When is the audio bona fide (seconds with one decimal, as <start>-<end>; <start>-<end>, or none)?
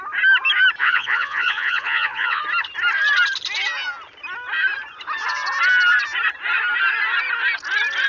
0.0-0.8; 2.4-8.1